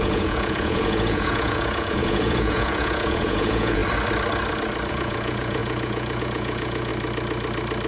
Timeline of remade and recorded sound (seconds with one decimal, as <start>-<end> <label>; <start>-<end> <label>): 0.0-3.8 remade; 3.8-4.9 recorded; 4.9-6.9 remade; 6.9-7.9 recorded